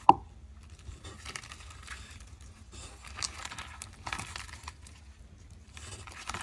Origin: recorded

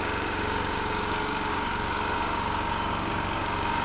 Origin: remade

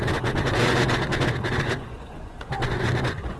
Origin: remade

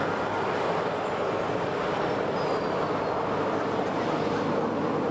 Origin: recorded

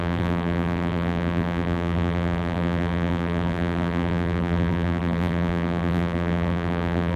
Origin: remade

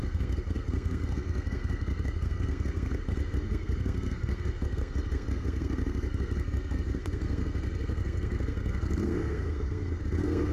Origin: remade